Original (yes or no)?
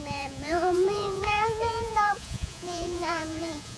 no